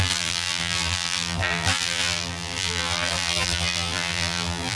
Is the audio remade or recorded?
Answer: remade